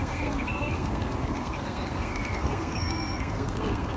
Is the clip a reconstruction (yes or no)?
yes